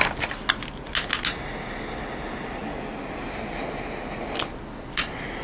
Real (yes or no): yes